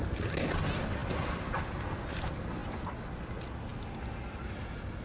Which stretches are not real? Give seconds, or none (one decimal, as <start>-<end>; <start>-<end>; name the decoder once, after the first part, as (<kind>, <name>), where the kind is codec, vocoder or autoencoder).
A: none